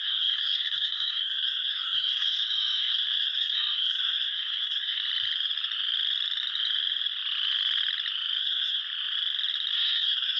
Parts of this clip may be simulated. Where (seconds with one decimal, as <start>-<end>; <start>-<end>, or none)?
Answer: 0.0-5.0; 8.4-8.8; 9.7-10.4